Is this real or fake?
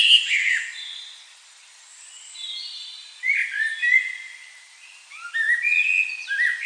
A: real